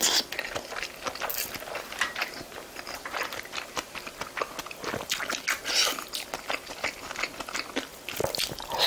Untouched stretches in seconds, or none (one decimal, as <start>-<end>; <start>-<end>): 0.0-1.3; 4.2-8.9